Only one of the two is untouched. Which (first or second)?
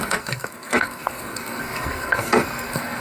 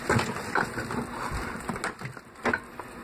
second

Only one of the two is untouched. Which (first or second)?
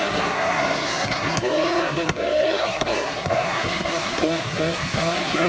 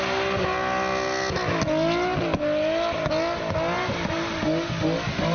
second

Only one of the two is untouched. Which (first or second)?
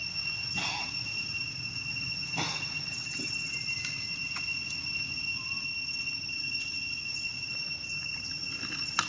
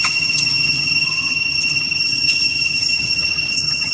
first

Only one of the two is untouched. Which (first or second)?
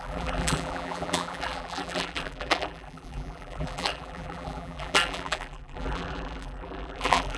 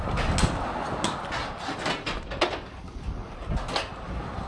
second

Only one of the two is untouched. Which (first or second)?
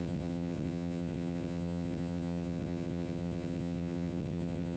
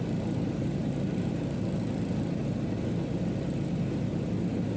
second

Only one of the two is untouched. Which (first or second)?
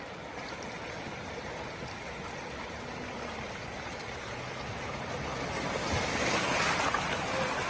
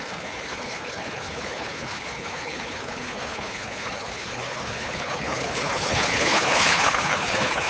first